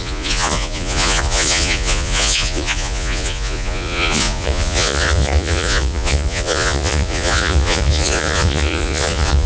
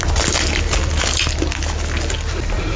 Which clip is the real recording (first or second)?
second